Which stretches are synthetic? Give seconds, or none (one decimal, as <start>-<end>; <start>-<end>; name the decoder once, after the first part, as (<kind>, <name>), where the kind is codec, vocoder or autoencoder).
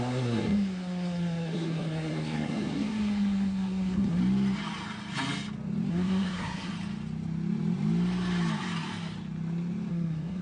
0.0-4.2 (codec, SNAC); 5.9-6.7; 9.9-10.4